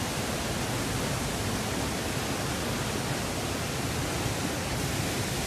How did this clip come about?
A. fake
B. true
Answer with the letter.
B